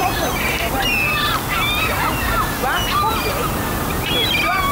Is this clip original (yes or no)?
yes